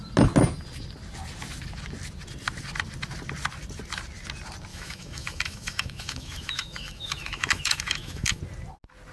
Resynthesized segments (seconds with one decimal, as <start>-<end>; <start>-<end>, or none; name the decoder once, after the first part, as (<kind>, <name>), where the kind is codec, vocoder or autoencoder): 4.7-8.4 (autoencoder, DAC-VAE)